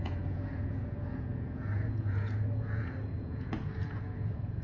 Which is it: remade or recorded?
remade